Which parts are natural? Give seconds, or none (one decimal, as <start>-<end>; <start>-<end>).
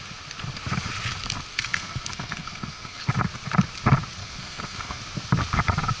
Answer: 0.0-1.5; 3.0-4.2; 5.0-6.0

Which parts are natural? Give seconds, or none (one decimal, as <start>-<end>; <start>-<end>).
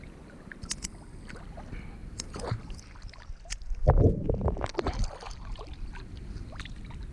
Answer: 0.0-7.1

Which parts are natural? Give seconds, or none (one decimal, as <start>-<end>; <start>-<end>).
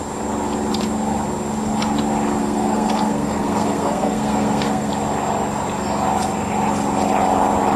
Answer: 0.0-2.4; 4.9-7.8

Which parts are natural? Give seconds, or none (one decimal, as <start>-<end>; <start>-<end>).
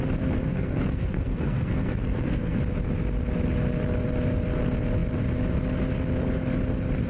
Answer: 0.0-0.4; 2.6-7.1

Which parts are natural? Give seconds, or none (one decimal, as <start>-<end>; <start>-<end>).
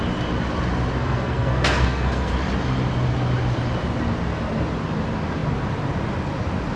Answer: 0.0-1.0; 2.3-6.8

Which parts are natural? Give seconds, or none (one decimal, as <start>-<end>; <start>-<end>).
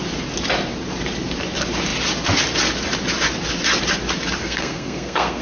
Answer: 0.0-4.4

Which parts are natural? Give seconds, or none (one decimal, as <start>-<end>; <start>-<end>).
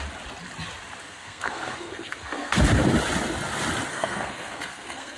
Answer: 0.0-1.0; 2.6-3.9